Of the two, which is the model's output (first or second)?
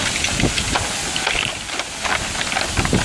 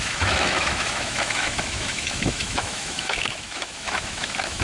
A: second